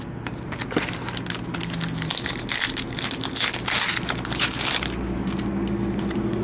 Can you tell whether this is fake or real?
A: real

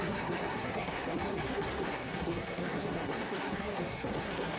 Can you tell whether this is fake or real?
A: fake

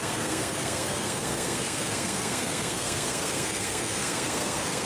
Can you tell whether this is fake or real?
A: fake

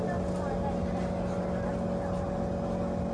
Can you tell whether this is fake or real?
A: real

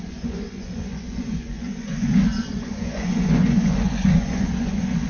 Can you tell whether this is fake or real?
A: fake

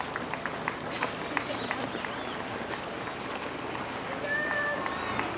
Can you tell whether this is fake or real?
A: real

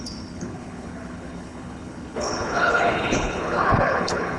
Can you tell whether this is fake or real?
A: fake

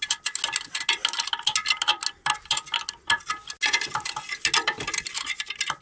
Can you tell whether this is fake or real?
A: real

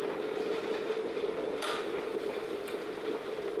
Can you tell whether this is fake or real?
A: real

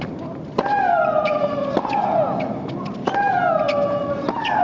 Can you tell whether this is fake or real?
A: real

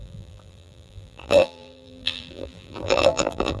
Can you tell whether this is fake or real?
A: fake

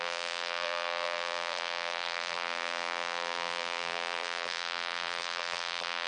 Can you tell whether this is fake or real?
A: fake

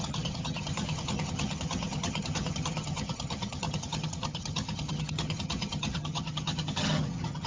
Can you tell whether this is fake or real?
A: fake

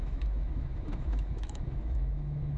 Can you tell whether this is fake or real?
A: fake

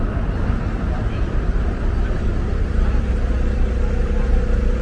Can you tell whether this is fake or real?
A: real